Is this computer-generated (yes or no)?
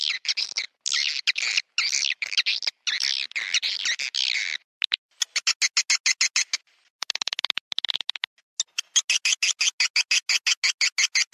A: no